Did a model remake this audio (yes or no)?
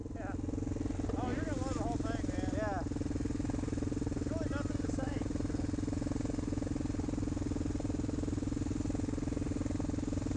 no